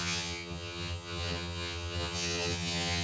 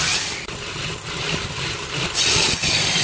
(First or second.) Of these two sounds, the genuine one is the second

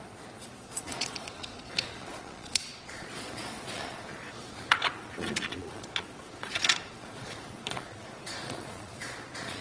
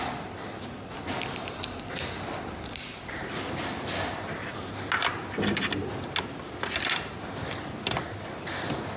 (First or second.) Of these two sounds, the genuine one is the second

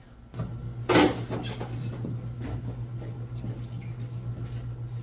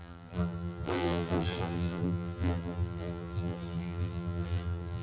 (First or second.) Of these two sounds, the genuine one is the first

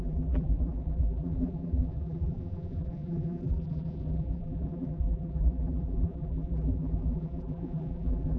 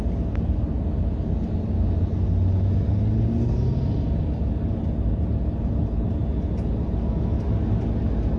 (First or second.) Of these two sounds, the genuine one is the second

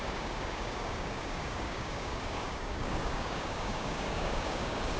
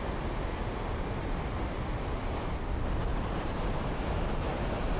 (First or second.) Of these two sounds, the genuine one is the second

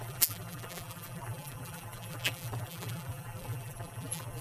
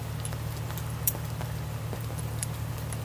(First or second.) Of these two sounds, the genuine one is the second